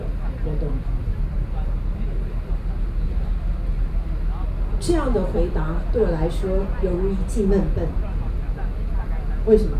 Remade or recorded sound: recorded